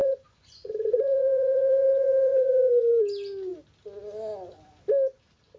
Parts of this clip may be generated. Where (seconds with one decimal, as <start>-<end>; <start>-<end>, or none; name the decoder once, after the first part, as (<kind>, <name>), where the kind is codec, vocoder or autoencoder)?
0.0-2.9 (vocoder, Vocos)